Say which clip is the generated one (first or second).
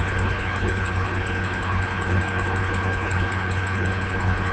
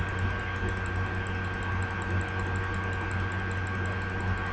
first